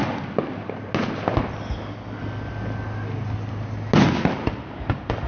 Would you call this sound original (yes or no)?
yes